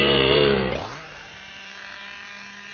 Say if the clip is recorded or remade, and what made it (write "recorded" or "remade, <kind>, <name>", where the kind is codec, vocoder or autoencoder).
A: remade, vocoder, BigVGAN v2